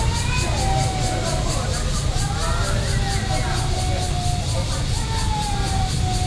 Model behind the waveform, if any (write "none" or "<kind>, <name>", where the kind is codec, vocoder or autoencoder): none